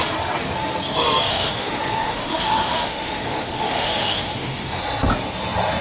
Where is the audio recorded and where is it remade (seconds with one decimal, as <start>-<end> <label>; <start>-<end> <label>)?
0.0-1.3 recorded; 1.3-4.8 remade; 4.8-5.8 recorded